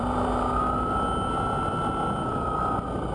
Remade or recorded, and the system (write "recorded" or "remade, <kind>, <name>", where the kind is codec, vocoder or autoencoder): recorded